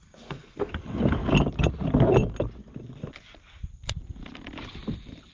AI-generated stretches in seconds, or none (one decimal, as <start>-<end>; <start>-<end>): 0.0-0.7